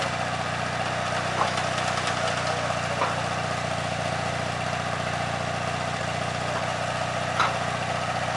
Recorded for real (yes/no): yes